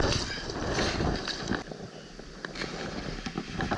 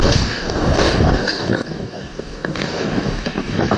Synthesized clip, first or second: second